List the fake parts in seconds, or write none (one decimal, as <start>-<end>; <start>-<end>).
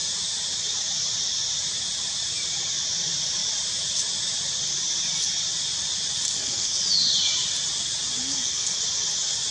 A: 6.3-6.8; 8.2-8.8